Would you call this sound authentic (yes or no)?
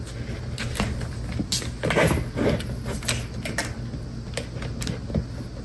yes